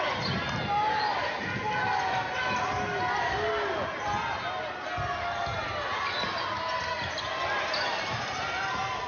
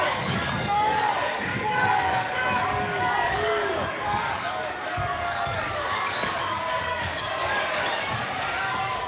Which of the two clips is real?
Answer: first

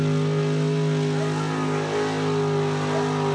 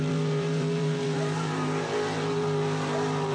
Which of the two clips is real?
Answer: first